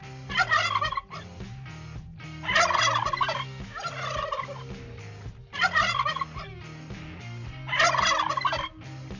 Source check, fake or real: real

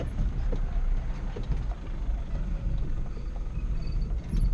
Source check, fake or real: real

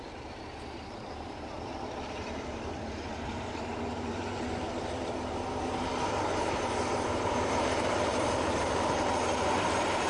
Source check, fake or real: fake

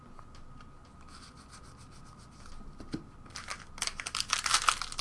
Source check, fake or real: real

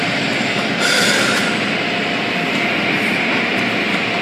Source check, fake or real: real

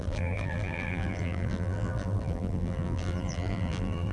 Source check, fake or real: fake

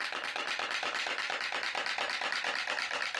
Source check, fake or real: fake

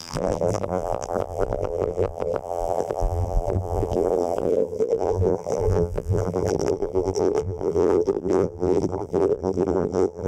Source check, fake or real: fake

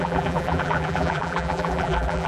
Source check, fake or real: fake